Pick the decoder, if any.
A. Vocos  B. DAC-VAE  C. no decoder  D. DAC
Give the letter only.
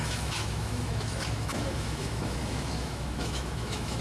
B